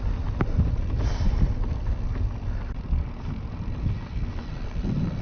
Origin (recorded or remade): recorded